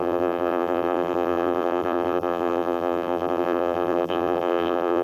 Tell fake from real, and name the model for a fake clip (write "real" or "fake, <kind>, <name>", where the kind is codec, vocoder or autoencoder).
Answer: fake, vocoder, BigVGAN v2